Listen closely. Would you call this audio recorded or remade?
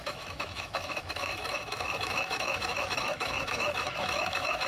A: remade